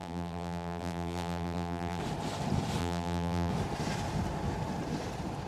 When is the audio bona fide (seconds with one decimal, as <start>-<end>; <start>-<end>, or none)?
2.0-2.8; 3.5-5.5